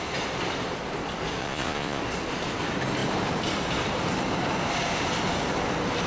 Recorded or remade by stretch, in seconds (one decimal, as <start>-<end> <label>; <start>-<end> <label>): 0.0-1.4 recorded; 1.4-2.0 remade; 2.0-6.1 recorded